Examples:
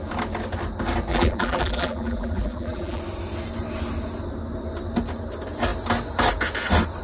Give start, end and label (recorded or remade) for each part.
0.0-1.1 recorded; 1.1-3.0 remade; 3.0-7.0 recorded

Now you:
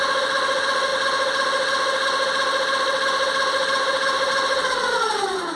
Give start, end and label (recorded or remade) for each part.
0.0-5.6 recorded

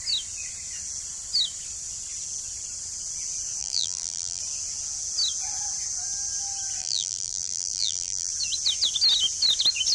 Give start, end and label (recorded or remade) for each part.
0.0-3.6 recorded; 3.6-4.4 remade; 4.4-6.8 recorded; 6.8-8.3 remade; 8.3-9.9 recorded

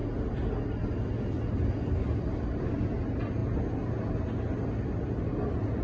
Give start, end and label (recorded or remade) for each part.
0.0-2.6 remade; 2.6-5.8 recorded

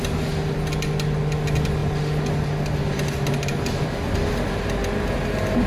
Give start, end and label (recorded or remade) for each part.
0.0-5.7 recorded